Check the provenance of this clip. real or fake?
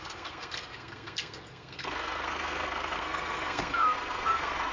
fake